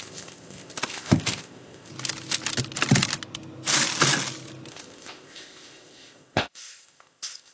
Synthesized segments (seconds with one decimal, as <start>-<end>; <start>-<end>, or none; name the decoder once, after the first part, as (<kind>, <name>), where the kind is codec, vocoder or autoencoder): 0.0-1.9 (codec, ZipCodec); 4.7-7.5